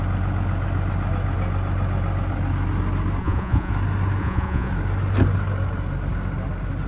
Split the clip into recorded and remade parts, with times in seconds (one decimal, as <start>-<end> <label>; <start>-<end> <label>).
0.0-3.2 recorded; 3.2-3.7 remade; 3.7-4.2 recorded; 4.2-4.7 remade; 4.7-6.9 recorded